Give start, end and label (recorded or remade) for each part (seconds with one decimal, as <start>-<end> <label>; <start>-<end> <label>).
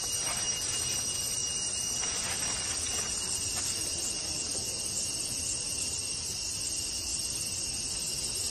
0.0-8.5 recorded